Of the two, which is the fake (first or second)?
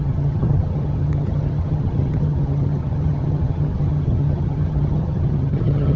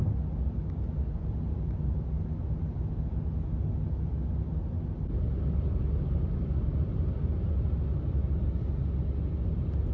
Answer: first